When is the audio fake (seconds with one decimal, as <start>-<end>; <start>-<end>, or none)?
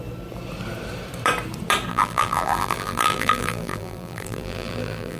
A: 1.9-5.2